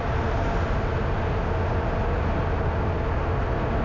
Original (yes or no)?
yes